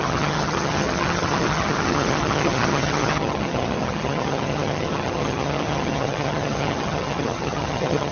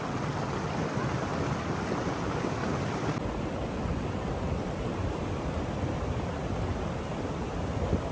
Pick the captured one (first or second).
second